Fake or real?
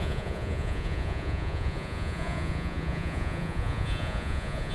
fake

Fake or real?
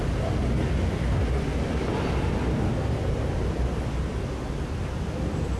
real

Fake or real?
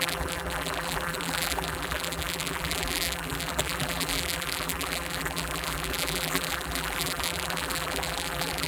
fake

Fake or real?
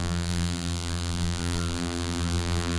fake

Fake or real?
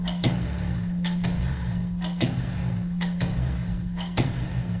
fake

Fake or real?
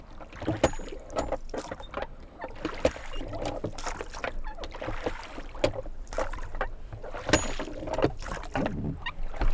real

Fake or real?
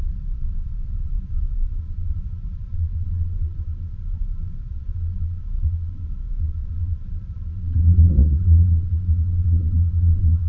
fake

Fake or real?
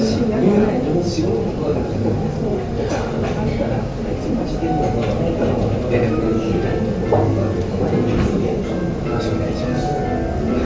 real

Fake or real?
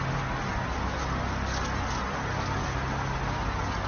real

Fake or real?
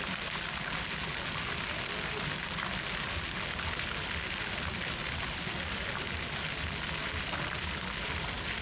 real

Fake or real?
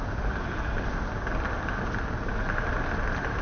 real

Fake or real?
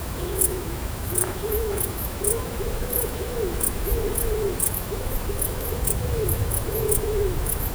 fake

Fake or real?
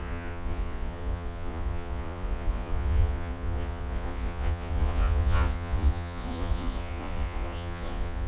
fake